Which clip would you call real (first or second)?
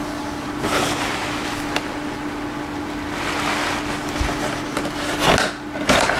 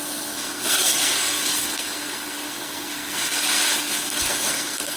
first